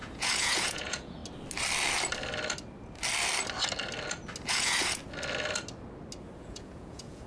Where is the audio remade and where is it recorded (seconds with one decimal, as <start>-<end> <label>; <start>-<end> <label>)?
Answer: 0.0-1.2 remade; 1.2-4.5 recorded; 4.5-5.0 remade; 5.0-6.4 recorded; 6.4-7.3 remade